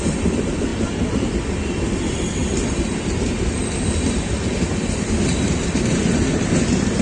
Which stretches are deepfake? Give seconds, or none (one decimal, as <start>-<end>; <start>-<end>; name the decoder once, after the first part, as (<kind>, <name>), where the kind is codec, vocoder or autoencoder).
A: 0.0-0.7 (vocoder, BigVGAN v2); 1.3-7.0